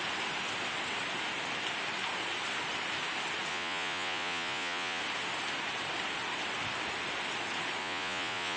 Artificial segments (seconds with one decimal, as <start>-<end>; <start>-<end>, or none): 3.5-5.0; 7.8-8.6